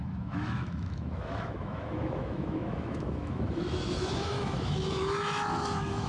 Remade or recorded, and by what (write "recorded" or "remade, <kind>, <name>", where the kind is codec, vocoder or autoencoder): remade, autoencoder, DAC-VAE